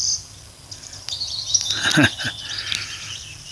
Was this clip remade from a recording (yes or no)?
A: no